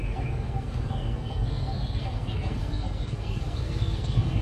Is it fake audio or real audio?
fake